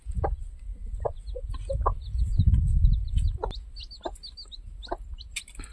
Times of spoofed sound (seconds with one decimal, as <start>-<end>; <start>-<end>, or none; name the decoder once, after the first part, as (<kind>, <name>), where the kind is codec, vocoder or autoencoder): none